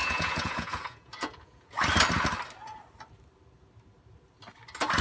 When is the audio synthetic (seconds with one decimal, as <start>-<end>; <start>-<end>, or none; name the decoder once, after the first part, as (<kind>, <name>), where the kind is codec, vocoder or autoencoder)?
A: 0.0-1.7 (vocoder, Vocos)